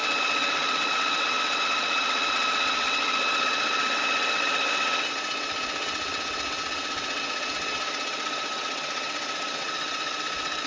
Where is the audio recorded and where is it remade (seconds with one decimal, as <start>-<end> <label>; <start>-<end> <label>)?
0.0-10.7 remade